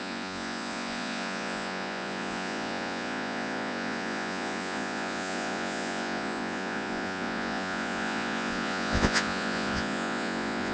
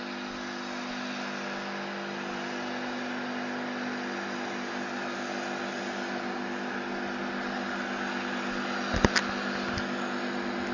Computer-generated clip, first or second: first